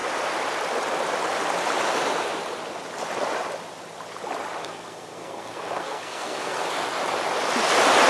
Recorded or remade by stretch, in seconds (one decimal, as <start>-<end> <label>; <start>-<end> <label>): 0.0-4.6 recorded; 4.6-6.7 remade; 6.7-8.1 recorded